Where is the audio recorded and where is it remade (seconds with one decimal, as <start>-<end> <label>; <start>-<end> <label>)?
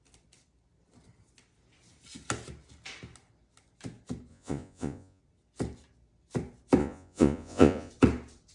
0.0-4.3 recorded; 4.3-5.2 remade; 5.2-6.8 recorded; 6.8-7.9 remade; 7.9-8.5 recorded